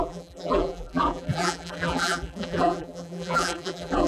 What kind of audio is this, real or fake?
fake